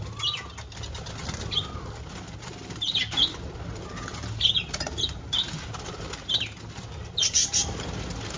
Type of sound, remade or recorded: recorded